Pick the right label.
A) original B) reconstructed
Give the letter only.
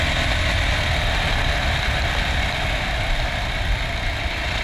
A